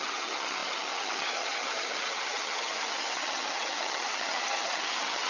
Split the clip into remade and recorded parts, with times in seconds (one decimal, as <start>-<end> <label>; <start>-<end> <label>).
0.0-5.3 remade